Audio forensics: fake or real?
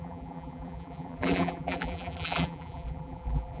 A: fake